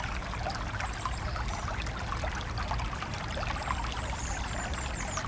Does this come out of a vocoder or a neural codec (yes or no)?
no